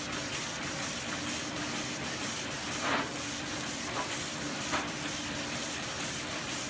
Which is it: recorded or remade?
remade